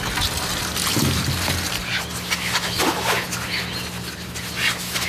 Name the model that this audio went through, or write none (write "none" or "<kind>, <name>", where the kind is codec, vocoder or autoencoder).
none